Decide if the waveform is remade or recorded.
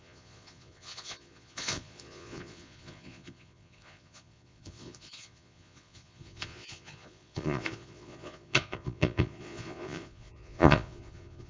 remade